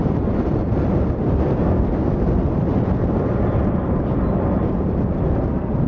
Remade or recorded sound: recorded